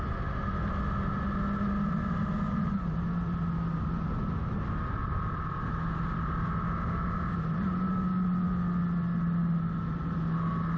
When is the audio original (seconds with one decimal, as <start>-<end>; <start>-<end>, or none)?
0.0-5.0; 5.9-10.8